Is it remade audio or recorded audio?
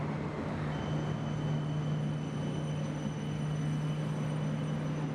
recorded